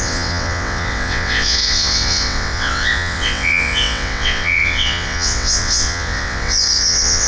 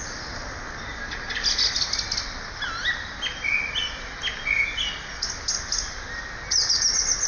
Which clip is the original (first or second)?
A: second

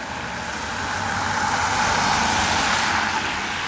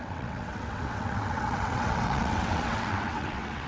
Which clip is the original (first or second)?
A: first